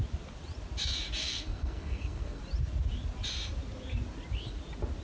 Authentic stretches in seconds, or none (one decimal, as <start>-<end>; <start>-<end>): 0.0-1.2; 2.4-5.0